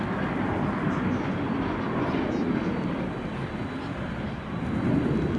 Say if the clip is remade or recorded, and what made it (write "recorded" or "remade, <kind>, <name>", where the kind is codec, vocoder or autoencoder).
recorded